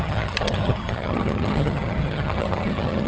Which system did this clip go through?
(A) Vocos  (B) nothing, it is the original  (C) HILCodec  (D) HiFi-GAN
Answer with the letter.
D